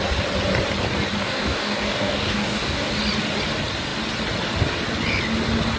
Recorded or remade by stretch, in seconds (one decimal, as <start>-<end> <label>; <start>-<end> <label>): 0.0-1.2 recorded; 1.2-2.9 remade; 2.9-5.8 recorded